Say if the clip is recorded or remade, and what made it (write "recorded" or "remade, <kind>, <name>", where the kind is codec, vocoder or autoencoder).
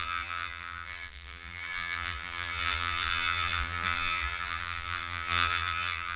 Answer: remade, vocoder, BigVGAN v2